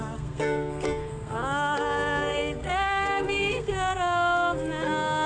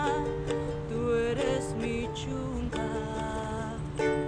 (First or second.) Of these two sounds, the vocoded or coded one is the first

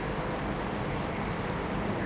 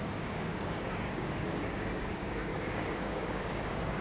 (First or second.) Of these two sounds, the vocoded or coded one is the second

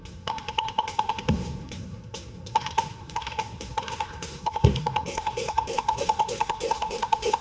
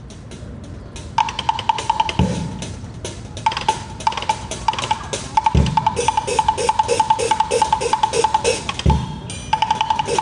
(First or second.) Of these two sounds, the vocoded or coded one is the first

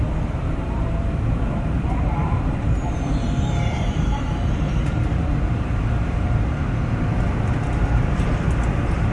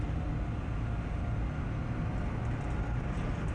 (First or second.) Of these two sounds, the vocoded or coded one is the first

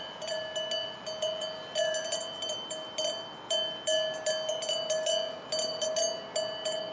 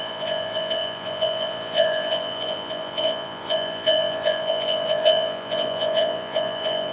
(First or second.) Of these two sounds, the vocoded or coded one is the second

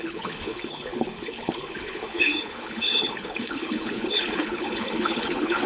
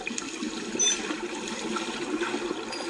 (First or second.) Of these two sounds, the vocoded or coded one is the first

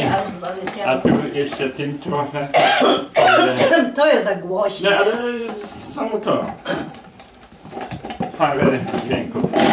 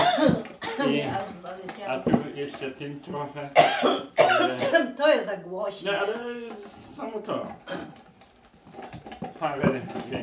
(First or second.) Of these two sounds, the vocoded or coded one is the first